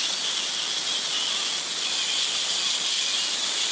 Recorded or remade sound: recorded